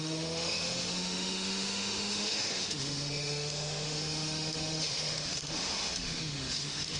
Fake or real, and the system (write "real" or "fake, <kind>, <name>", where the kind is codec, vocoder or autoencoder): fake, autoencoder, DAC-VAE